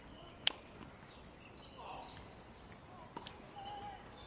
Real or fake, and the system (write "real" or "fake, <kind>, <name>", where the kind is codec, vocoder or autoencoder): real